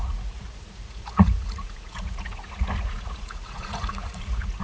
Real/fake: fake